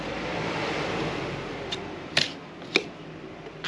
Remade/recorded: remade